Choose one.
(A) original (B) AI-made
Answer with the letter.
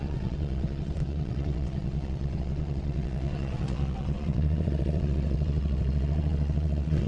B